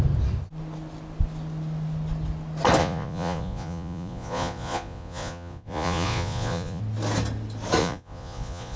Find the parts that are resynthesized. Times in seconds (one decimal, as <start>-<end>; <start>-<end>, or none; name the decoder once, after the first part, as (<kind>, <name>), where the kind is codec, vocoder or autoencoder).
2.8-6.8 (vocoder, Vocos); 7.8-8.8